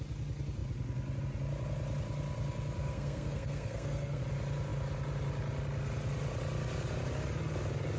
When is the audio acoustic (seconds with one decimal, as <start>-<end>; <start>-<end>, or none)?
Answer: 0.0-2.8; 4.2-8.0